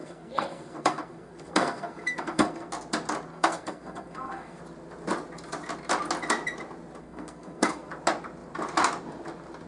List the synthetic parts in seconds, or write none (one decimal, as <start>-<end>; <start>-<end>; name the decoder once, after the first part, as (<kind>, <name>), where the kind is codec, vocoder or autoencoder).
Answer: 0.0-2.7 (codec, SNAC); 3.3-4.6; 7.0-7.9